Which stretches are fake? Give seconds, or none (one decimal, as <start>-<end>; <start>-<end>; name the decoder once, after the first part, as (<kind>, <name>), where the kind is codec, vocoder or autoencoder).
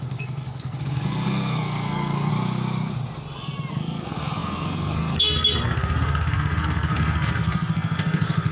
0.0-2.3 (codec, SNAC); 3.7-8.5